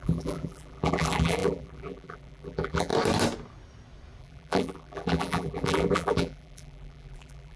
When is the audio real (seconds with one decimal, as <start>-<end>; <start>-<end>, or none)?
2.9-4.2